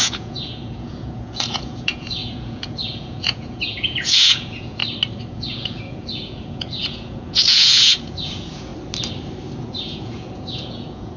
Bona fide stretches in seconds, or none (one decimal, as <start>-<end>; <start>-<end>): 4.8-5.3; 8.7-9.6